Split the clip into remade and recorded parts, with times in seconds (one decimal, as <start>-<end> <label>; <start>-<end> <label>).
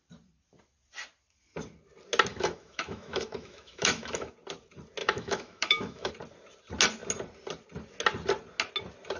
0.0-2.3 recorded; 2.3-4.3 remade; 4.3-5.0 recorded; 5.0-6.1 remade; 6.1-9.2 recorded